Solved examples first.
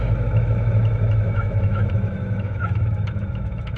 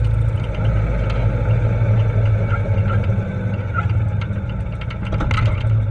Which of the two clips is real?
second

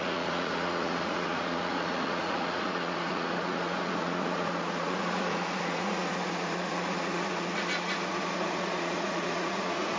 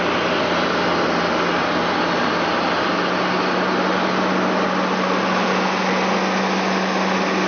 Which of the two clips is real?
second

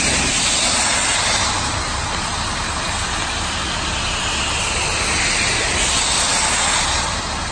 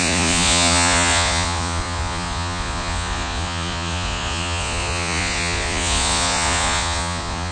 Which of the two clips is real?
first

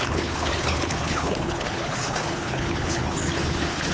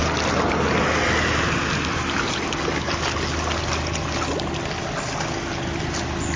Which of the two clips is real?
second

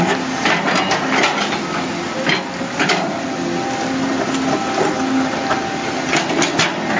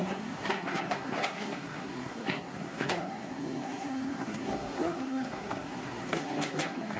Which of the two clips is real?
first